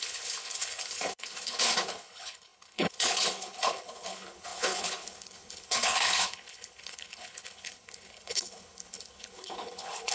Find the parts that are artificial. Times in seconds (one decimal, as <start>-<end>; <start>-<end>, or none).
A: 0.0-10.1